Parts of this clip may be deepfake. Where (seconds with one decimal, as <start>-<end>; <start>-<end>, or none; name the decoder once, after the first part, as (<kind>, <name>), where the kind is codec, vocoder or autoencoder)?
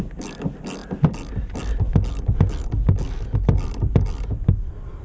none